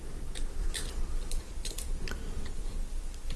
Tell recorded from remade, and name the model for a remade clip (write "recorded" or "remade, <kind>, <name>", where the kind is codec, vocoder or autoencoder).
recorded